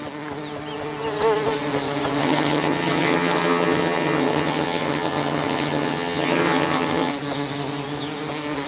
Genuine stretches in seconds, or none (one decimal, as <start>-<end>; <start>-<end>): 0.0-2.2; 7.1-8.7